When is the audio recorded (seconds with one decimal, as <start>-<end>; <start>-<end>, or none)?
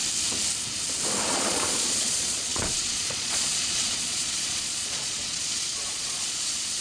0.0-1.3